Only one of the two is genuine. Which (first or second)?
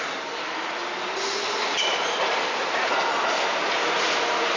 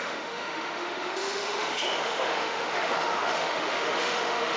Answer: first